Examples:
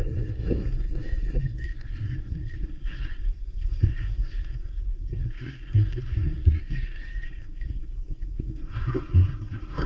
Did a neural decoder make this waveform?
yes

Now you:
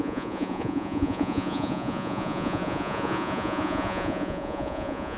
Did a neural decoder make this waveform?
yes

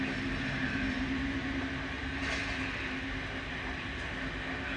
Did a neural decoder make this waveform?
no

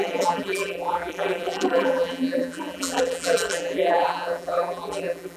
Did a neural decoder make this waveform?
yes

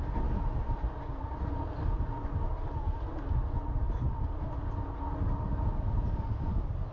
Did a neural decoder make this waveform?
no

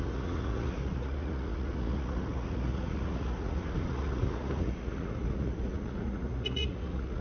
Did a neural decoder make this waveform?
yes